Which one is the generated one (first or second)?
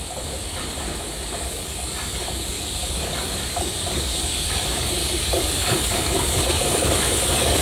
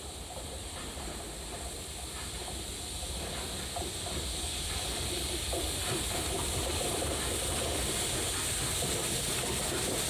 first